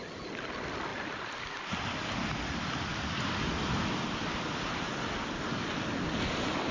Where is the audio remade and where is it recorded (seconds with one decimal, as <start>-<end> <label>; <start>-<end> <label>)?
0.0-6.7 recorded